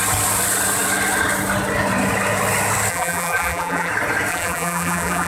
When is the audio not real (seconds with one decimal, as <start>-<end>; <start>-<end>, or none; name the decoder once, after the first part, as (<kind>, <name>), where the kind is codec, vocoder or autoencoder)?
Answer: 2.9-3.9 (vocoder, BigVGAN v2); 4.3-5.3